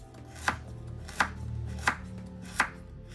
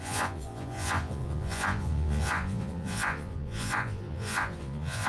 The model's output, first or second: second